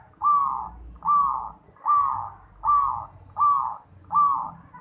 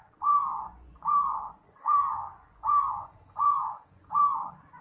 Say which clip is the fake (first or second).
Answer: second